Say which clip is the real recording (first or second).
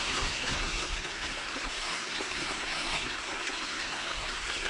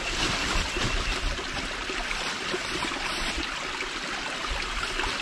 second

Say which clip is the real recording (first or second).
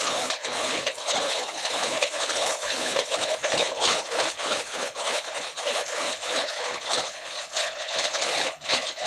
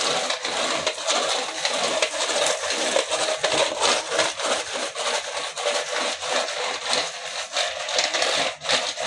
second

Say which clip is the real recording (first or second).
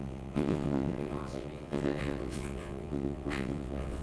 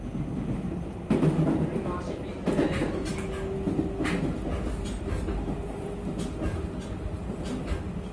second